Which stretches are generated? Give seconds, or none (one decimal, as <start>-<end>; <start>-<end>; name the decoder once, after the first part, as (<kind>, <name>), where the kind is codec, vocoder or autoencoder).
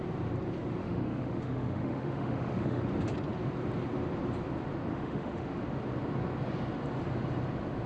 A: 0.8-2.8 (autoencoder, DAC-VAE); 4.9-5.6